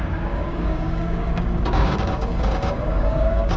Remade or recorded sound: remade